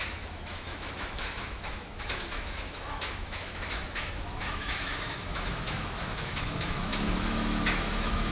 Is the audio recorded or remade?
remade